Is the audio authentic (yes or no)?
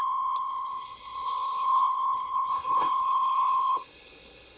no